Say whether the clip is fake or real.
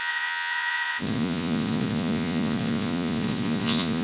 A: fake